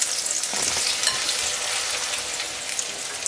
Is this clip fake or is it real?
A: real